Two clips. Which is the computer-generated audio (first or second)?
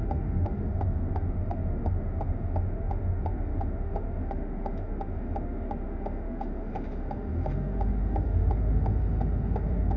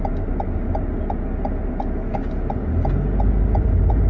first